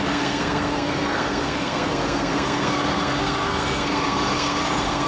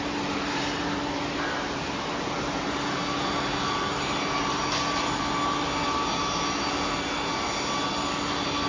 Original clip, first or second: second